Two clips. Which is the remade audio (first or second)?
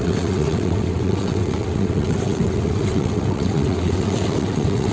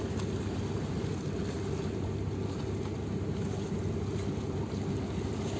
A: first